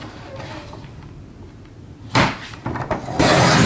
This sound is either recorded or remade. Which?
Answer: recorded